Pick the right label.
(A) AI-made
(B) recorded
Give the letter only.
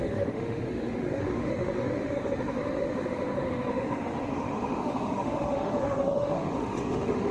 A